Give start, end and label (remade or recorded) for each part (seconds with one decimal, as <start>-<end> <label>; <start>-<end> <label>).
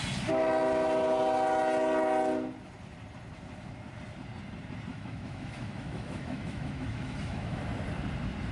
0.0-4.9 recorded; 4.9-7.6 remade; 7.6-8.5 recorded